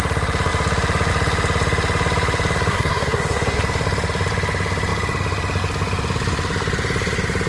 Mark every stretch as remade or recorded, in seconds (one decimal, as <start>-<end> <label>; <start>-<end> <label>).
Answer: 0.0-2.7 recorded; 2.7-3.6 remade; 3.6-7.5 recorded